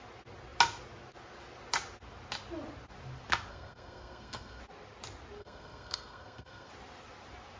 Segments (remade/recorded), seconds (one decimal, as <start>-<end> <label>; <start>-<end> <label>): 0.0-3.5 recorded; 3.5-4.6 remade; 4.6-5.4 recorded; 5.4-6.7 remade; 6.7-7.6 recorded